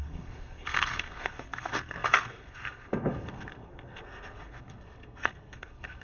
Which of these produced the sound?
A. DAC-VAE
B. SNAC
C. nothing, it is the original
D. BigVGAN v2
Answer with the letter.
B